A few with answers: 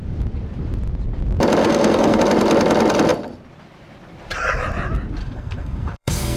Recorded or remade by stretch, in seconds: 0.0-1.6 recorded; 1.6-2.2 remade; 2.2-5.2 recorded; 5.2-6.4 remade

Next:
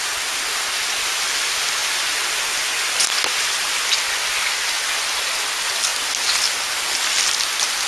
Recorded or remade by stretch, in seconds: 0.0-7.9 recorded

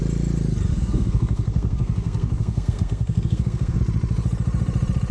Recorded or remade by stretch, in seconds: 0.0-0.7 recorded; 0.7-3.8 remade; 3.8-5.1 recorded

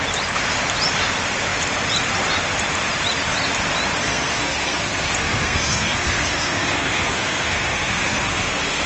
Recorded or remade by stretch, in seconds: 0.0-4.0 recorded; 4.0-8.9 remade